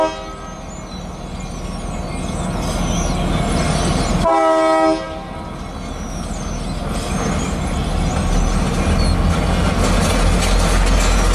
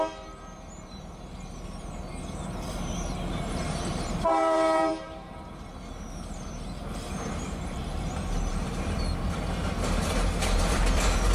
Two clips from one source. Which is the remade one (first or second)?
second